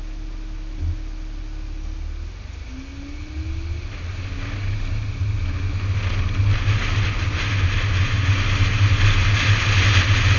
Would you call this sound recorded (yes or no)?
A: yes